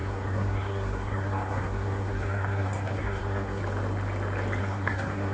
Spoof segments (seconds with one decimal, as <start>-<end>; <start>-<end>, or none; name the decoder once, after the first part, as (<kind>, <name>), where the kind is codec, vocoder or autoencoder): 0.0-3.6 (codec, SNAC); 4.6-5.3